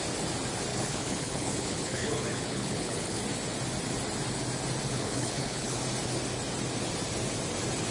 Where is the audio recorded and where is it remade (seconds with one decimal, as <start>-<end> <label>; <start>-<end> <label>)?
0.0-0.7 recorded; 0.7-3.2 remade; 3.2-4.9 recorded; 4.9-5.8 remade; 5.8-7.9 recorded